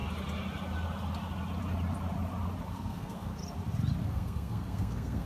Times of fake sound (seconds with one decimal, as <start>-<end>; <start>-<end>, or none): 2.7-3.4; 4.0-5.3